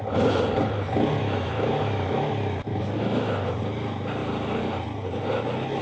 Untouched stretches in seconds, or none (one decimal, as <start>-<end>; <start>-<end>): 0.0-1.2; 2.3-2.7; 3.6-5.8